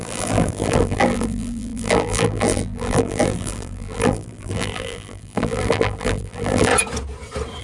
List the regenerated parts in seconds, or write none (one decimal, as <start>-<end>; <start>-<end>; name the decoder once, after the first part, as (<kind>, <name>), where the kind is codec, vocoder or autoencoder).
0.0-6.7 (vocoder, BigVGAN v2)